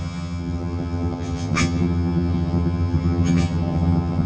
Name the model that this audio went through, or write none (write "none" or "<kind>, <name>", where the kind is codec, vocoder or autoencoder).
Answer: vocoder, HiFi-GAN